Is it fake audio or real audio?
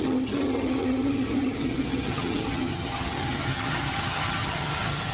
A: fake